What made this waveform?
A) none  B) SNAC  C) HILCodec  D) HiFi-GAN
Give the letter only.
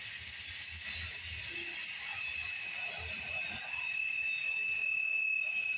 A